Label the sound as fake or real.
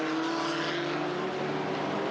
real